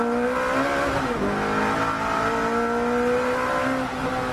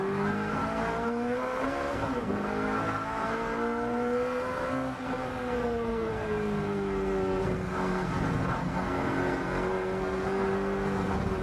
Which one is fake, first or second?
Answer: second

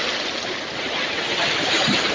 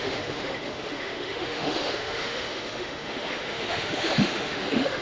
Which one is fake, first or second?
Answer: second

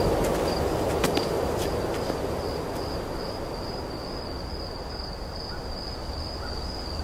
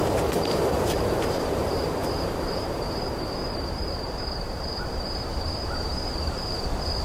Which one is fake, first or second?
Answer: second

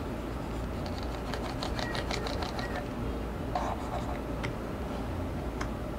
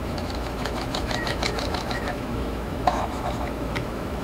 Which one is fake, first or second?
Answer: second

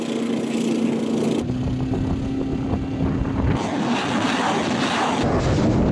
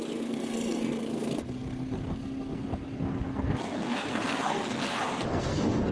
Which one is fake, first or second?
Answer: second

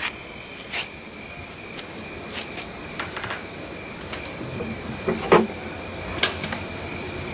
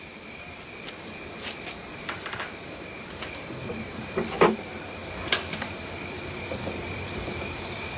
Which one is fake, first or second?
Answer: second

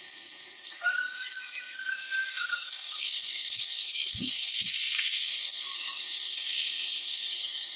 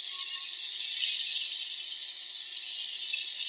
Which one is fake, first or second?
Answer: first